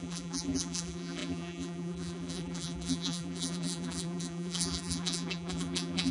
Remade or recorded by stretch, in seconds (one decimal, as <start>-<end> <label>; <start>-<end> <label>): 0.0-6.1 remade